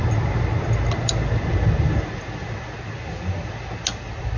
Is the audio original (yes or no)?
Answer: yes